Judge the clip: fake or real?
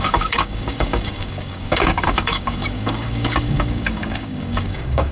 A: fake